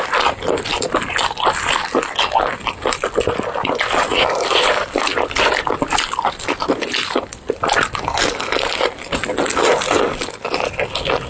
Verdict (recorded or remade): recorded